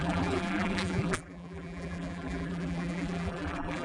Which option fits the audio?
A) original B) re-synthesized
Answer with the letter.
B